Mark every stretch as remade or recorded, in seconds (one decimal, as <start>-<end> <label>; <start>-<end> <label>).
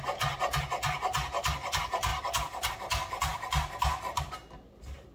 0.0-5.1 recorded